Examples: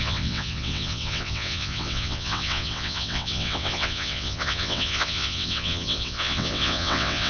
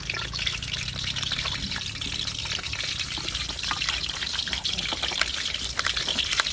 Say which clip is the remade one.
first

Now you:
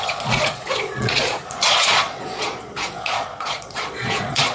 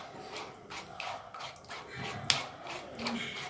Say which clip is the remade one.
first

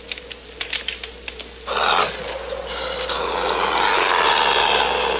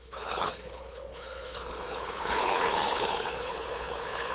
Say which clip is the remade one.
second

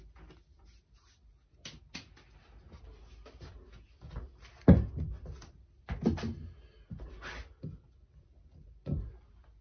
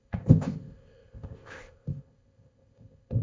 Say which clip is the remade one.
second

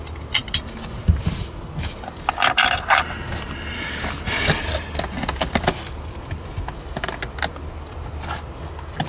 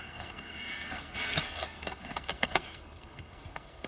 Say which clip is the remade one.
second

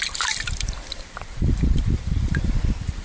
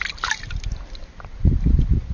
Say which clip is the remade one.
first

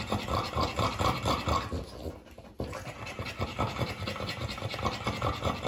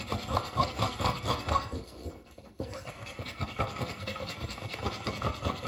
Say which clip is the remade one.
second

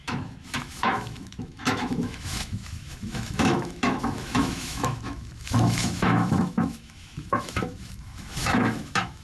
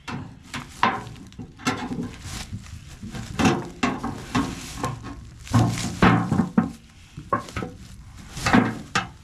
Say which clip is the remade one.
first